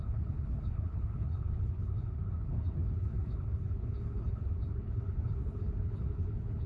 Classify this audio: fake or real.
fake